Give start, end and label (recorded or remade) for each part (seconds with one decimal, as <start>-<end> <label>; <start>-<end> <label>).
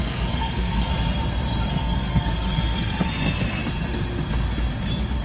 0.0-0.9 remade; 0.9-1.7 recorded; 1.7-3.6 remade; 3.6-5.2 recorded